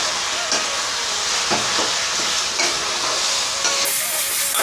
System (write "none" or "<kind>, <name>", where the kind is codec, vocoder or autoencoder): none